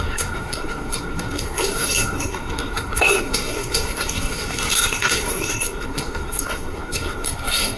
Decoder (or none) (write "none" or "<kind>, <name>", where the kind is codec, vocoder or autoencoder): codec, SNAC